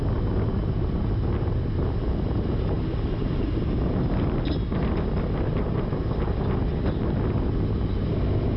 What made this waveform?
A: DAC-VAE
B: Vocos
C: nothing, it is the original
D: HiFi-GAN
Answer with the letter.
C